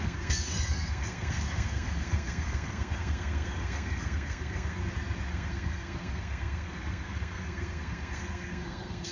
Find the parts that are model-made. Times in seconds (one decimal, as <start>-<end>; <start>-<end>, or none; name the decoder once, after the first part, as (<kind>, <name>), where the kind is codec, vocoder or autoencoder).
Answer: 0.0-4.8 (codec, SNAC); 5.3-9.1